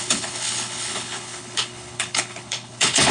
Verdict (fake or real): fake